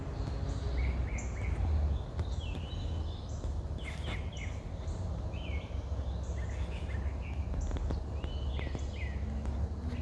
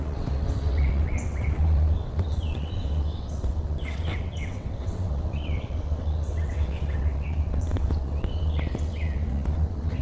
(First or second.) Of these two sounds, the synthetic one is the second